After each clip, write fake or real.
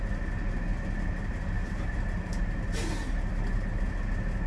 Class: real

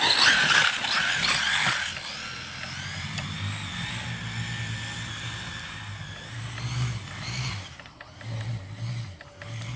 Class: real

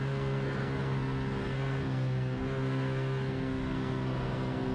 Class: fake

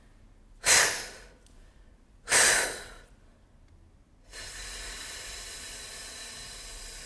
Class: real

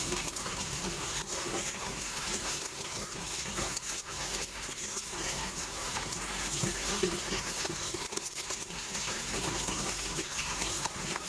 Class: fake